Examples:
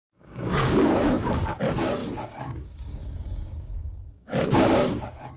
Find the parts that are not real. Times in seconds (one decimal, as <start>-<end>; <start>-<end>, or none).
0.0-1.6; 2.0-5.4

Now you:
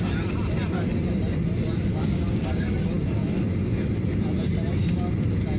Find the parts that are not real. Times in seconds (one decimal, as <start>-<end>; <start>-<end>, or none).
1.9-2.7

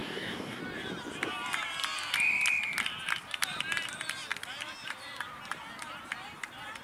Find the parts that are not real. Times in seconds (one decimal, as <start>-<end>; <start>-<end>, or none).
0.0-0.6